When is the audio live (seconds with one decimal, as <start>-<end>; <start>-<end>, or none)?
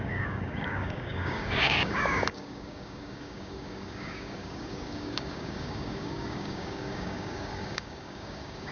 none